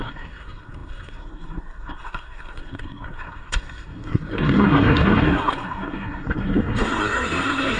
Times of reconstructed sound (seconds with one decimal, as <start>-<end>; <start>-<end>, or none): 0.0-7.8